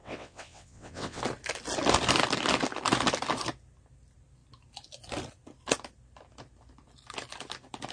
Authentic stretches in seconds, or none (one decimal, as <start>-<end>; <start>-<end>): 1.2-7.9